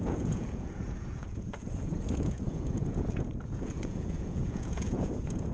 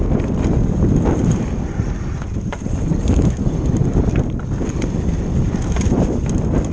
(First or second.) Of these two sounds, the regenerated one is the first